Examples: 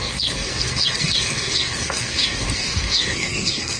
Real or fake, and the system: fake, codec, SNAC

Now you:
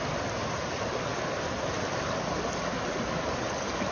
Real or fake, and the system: real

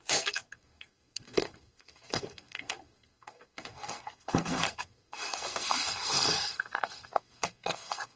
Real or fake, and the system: fake, codec, SNAC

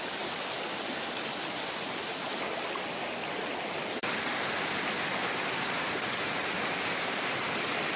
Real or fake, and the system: real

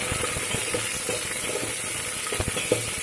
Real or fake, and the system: real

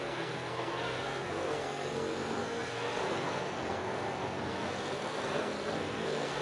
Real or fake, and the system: fake, codec, SNAC